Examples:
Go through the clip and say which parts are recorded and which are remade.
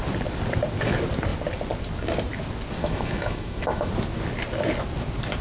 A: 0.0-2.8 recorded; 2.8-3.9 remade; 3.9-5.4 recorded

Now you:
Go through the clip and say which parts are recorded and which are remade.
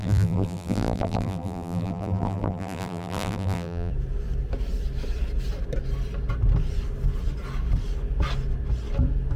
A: 0.0-3.9 remade; 3.9-9.4 recorded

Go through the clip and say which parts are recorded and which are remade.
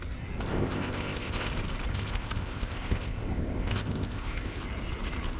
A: 0.0-0.5 recorded; 0.5-1.5 remade; 1.5-1.9 recorded; 1.9-4.6 remade; 4.6-5.4 recorded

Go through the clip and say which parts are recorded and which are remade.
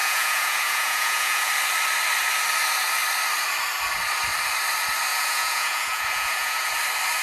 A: 0.0-1.5 remade; 1.5-5.1 recorded; 5.1-6.7 remade; 6.7-7.2 recorded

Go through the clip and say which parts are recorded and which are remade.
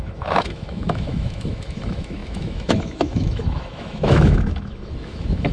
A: 0.0-5.5 remade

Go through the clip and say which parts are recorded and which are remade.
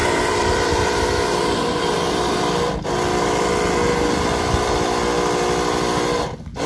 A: 0.0-2.4 remade; 2.4-6.7 recorded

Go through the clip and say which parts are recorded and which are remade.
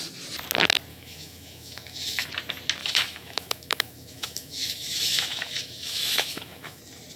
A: 0.0-0.9 recorded; 0.9-2.3 remade; 2.3-2.8 recorded; 2.8-6.8 remade; 6.8-7.2 recorded